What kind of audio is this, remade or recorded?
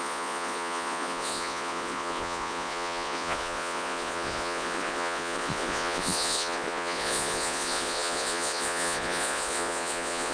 remade